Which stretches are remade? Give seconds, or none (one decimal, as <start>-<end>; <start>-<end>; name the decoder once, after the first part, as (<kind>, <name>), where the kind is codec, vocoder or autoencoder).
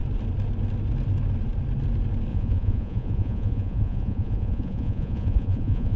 2.3-6.0 (vocoder, Vocos)